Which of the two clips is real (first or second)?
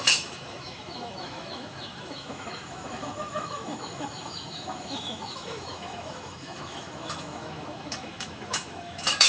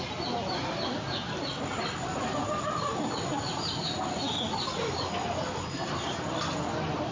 second